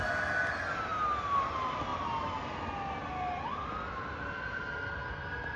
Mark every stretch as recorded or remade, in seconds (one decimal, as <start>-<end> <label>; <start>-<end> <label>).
0.0-5.6 recorded